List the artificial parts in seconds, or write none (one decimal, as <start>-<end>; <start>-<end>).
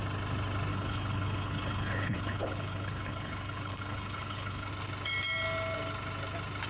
0.7-4.7